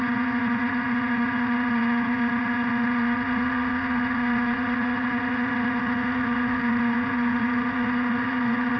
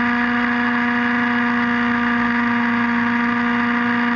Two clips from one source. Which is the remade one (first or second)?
first